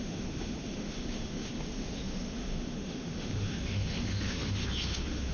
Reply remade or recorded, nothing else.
remade